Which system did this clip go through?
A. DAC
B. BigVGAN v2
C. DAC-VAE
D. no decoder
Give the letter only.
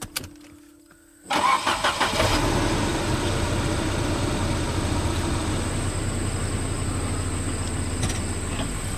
D